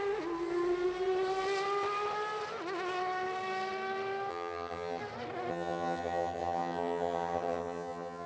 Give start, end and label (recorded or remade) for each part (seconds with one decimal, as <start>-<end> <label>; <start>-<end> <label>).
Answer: 0.0-4.3 recorded; 4.3-5.0 remade; 5.0-5.5 recorded; 5.5-8.3 remade